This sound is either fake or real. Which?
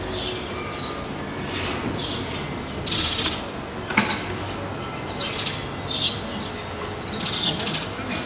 real